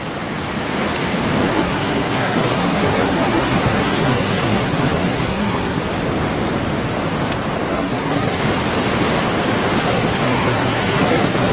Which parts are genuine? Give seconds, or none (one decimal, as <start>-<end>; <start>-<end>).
0.0-1.4; 5.8-7.7; 8.4-9.8